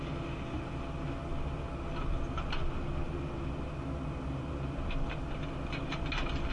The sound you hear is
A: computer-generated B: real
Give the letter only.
B